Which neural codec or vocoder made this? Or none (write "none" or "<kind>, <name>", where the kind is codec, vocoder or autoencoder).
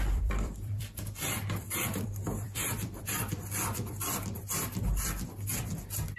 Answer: vocoder, BigVGAN v2